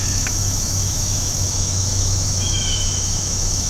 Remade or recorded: remade